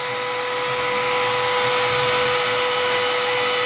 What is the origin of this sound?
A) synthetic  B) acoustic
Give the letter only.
B